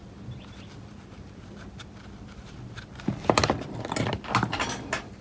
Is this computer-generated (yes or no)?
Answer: yes